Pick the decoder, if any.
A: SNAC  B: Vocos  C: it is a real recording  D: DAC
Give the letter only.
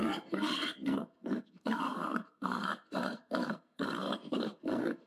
A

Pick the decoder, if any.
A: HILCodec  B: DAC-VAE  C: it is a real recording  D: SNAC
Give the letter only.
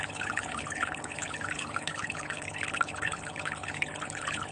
A